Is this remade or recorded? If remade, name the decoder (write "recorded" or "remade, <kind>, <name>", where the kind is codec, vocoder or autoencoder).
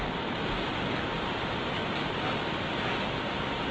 recorded